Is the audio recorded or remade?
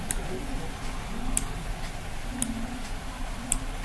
recorded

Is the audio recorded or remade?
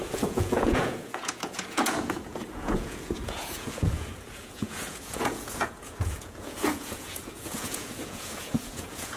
remade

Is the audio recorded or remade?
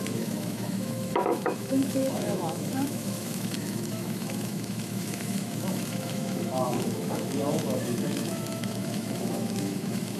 remade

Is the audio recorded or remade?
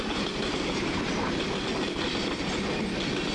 recorded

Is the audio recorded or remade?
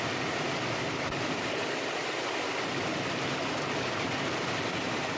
recorded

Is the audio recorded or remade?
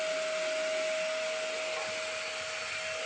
recorded